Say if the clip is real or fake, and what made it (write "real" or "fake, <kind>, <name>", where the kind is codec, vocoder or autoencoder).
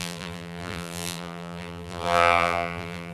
fake, vocoder, BigVGAN v2